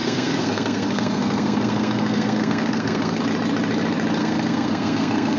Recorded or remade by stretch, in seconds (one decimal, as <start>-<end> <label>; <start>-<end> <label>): 0.0-3.2 remade; 3.2-4.2 recorded; 4.2-5.4 remade